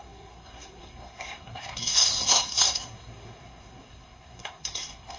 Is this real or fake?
fake